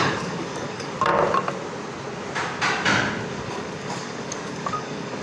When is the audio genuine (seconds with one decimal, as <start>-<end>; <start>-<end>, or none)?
1.1-3.3